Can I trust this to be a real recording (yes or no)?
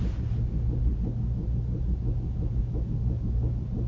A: yes